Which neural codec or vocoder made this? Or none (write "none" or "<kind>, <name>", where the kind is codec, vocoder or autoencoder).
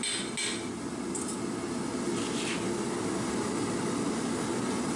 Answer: none